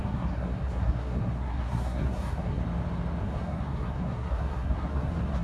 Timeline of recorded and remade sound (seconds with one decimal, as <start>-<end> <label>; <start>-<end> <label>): 0.0-2.6 remade; 2.6-3.2 recorded; 3.2-5.4 remade